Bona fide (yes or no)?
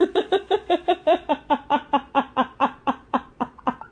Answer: no